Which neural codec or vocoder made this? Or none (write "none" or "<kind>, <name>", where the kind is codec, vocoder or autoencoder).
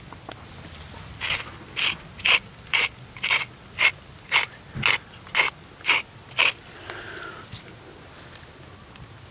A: none